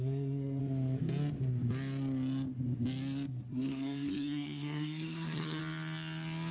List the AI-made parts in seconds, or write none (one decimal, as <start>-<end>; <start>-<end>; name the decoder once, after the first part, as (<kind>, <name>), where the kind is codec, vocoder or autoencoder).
0.0-0.6 (codec, SNAC); 3.5-5.6